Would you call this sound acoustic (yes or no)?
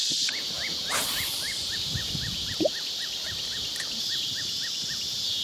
no